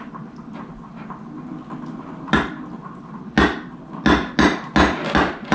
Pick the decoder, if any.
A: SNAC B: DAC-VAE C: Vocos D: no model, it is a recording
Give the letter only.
D